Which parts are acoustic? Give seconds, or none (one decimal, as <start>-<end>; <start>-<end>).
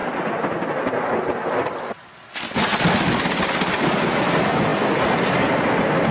0.0-6.1